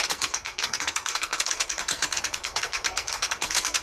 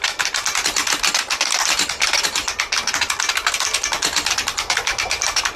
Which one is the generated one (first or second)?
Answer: first